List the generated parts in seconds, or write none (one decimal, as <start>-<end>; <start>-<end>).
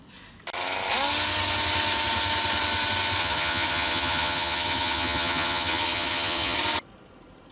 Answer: 3.2-6.6